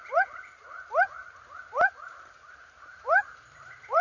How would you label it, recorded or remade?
remade